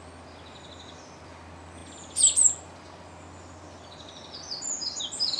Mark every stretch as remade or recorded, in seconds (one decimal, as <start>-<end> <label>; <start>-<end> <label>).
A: 0.0-5.4 recorded